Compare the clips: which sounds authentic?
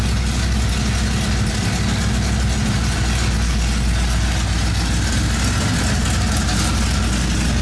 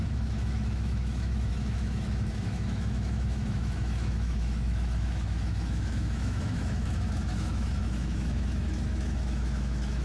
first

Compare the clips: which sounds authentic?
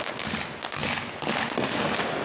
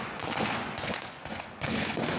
first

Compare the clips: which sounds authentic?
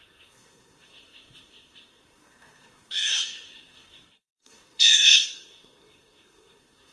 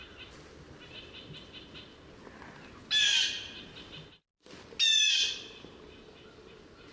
second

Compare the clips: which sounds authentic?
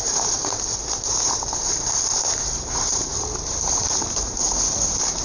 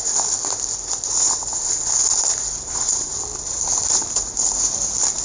second